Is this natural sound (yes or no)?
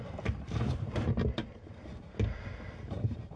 yes